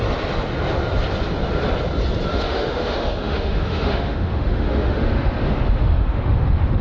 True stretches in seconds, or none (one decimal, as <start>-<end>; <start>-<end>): 0.0-2.3